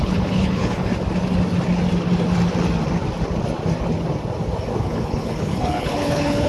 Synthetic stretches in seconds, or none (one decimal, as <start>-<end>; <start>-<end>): 0.0-0.9; 4.8-6.5